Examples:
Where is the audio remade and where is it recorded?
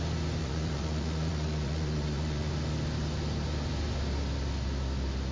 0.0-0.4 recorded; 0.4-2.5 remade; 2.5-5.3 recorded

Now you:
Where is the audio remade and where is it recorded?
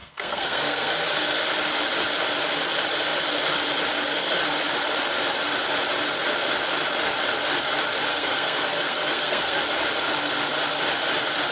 0.0-0.9 remade; 0.9-8.1 recorded; 8.1-9.6 remade; 9.6-11.5 recorded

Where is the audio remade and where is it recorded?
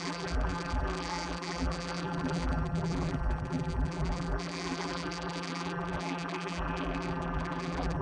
0.0-8.0 remade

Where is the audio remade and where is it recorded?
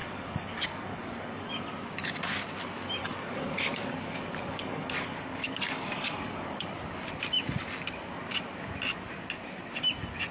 0.0-1.5 remade; 1.5-3.0 recorded; 3.0-6.7 remade; 6.7-10.3 recorded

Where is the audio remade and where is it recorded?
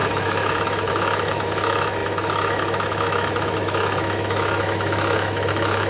0.0-5.9 remade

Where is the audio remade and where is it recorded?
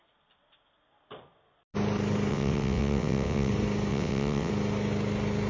0.0-2.3 recorded; 2.3-3.5 remade; 3.5-3.9 recorded; 3.9-4.5 remade; 4.5-5.5 recorded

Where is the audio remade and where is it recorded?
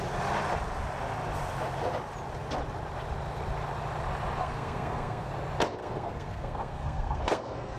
0.0-4.4 recorded; 4.4-5.3 remade; 5.3-5.8 recorded; 5.8-7.8 remade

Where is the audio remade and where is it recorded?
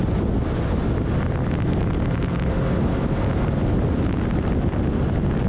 0.0-5.5 recorded